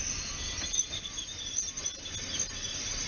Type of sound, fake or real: real